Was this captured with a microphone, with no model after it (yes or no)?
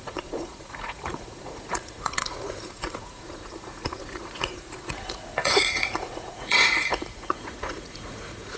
no